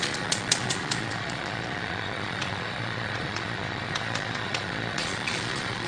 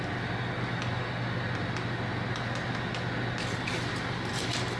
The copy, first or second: first